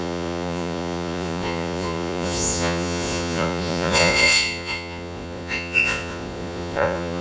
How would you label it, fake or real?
fake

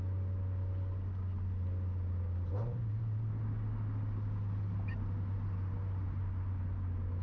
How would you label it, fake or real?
real